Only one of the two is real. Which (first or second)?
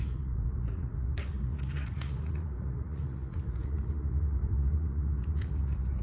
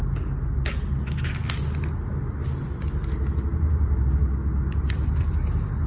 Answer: second